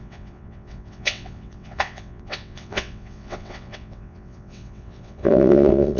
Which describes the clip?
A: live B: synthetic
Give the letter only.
B